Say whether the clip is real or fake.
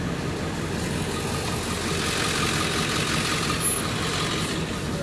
real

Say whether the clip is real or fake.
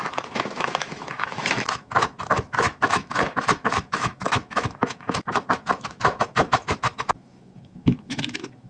fake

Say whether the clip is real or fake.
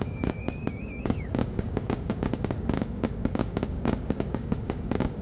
fake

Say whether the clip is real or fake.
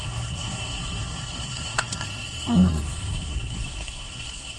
fake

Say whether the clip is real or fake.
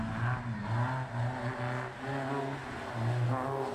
real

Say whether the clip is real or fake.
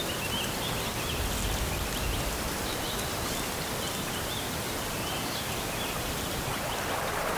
real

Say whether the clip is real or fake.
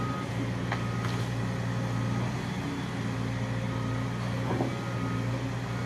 real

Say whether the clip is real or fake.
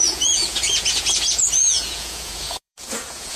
fake